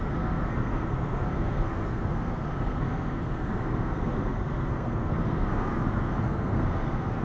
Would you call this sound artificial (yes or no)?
yes